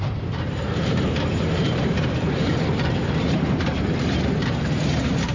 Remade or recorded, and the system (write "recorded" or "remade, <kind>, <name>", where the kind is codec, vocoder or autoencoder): remade, vocoder, BigVGAN v2